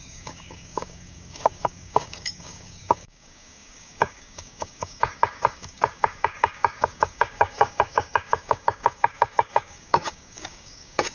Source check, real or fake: fake